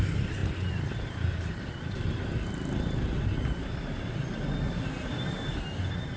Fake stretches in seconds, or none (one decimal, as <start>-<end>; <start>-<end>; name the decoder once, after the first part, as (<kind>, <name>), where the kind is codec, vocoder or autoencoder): none